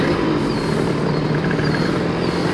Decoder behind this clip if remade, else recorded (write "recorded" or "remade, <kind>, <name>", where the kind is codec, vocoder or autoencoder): recorded